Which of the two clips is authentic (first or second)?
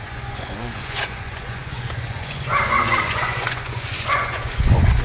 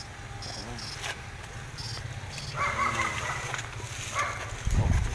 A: second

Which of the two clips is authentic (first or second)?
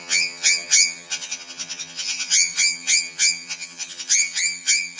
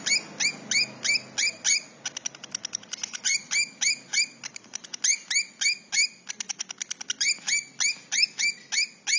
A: second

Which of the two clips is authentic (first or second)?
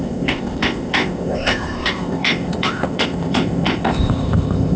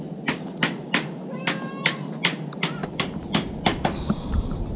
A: second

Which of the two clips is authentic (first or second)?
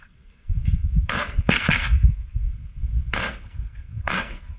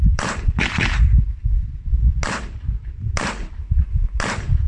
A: second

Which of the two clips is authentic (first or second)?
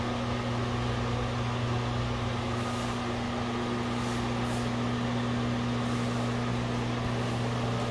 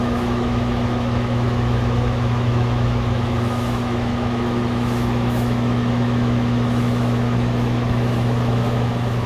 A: first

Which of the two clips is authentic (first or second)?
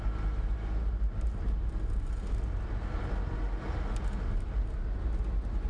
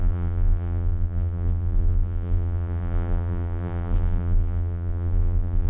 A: first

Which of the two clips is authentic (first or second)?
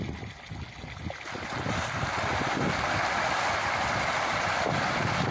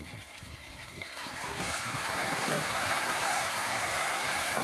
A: first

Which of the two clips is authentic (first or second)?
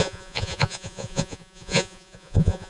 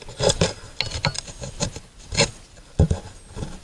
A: second